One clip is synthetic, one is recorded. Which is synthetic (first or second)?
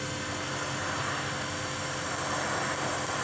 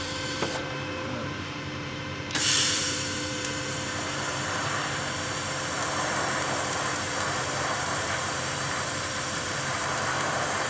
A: second